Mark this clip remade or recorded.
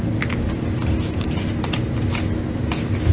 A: recorded